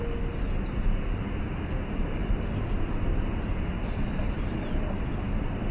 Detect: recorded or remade recorded